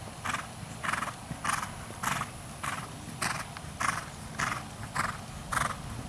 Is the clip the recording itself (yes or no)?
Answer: yes